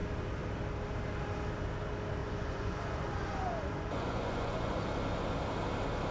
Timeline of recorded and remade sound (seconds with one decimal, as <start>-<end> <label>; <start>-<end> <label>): 0.0-2.2 recorded; 2.2-4.8 remade; 4.8-6.1 recorded